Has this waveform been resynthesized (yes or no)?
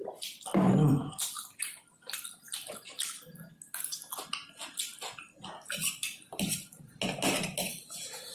no